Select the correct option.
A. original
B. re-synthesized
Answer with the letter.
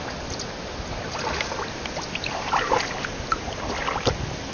A